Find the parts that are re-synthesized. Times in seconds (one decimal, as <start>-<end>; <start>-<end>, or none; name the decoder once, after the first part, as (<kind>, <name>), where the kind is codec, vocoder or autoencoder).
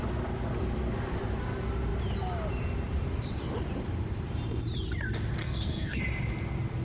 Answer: 5.4-6.0 (codec, SNAC)